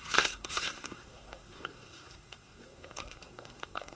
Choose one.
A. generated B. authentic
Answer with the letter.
A